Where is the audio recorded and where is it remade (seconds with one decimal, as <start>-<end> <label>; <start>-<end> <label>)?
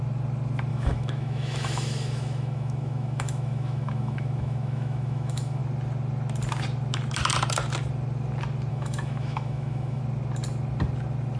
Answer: 0.0-0.7 recorded; 0.7-5.6 remade; 5.6-8.7 recorded; 8.7-10.0 remade; 10.0-11.4 recorded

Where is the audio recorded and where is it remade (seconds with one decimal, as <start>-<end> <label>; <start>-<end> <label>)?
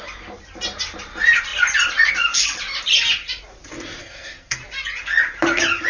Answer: 0.0-4.0 recorded; 4.0-4.6 remade; 4.6-5.9 recorded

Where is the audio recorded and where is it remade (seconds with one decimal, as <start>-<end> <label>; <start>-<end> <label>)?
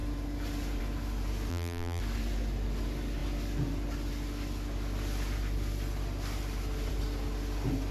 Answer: 0.0-1.5 recorded; 1.5-2.0 remade; 2.0-7.9 recorded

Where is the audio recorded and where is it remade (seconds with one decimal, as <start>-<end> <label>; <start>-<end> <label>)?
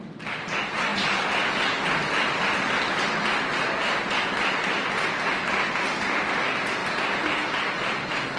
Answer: 0.0-8.4 recorded